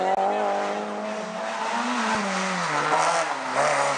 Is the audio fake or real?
real